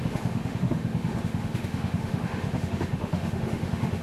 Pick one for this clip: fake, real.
fake